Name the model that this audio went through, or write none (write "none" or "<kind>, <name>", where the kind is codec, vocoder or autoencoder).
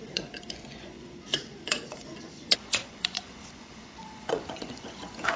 vocoder, Vocos